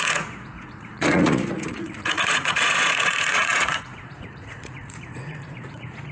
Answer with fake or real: fake